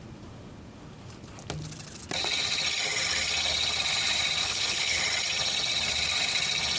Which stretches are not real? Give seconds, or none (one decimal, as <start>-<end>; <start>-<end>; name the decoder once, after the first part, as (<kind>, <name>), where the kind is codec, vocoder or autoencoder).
4.4-5.0 (codec, HILCodec)